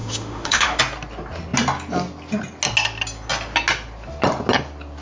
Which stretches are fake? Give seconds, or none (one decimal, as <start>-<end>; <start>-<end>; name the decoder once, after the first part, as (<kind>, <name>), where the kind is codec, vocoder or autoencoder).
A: 0.0-0.8 (autoencoder, DAC-VAE)